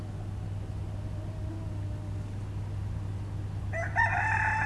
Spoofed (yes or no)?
no